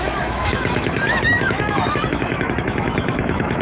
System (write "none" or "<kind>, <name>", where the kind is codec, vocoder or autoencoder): autoencoder, DAC-VAE